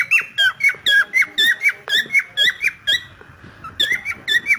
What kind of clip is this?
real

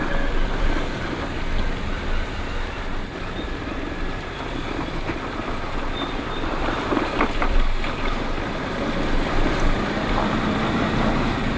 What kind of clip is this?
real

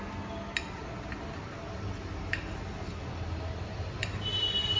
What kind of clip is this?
real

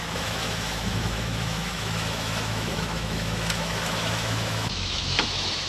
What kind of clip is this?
fake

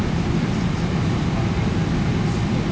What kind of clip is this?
real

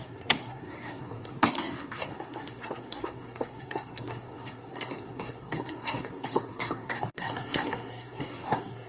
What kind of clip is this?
fake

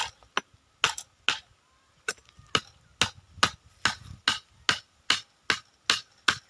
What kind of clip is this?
real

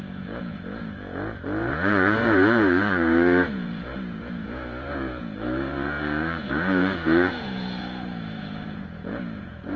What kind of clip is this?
fake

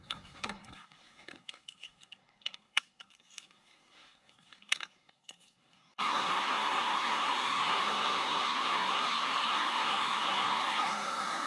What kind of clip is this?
fake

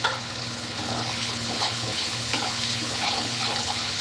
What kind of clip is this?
fake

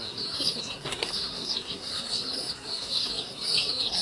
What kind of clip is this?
fake